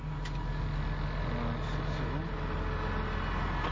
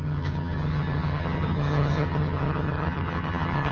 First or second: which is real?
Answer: first